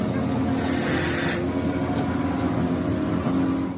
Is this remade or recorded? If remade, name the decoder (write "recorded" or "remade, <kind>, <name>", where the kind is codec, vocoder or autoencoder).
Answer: recorded